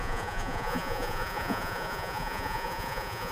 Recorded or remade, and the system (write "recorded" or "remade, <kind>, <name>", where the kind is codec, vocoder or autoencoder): remade, vocoder, Vocos